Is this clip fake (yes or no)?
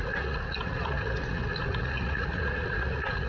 yes